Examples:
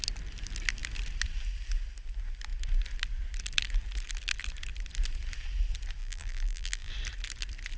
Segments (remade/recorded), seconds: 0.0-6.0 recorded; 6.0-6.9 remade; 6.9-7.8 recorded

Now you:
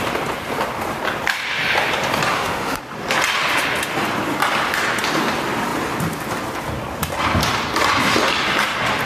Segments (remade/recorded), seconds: 0.0-2.3 recorded; 2.3-2.8 remade; 2.8-9.1 recorded

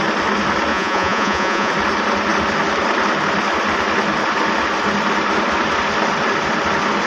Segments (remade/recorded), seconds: 0.0-0.7 recorded; 0.7-1.7 remade; 1.7-7.1 recorded

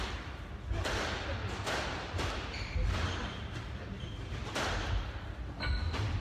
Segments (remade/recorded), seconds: 0.0-1.4 recorded; 1.4-4.1 remade; 4.1-6.2 recorded

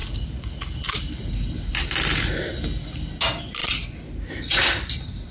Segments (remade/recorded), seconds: 0.0-3.6 recorded; 3.6-5.3 remade